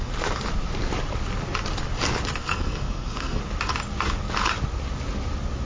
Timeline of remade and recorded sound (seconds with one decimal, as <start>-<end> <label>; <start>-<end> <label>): 0.0-2.4 recorded; 2.4-3.4 remade; 3.4-5.6 recorded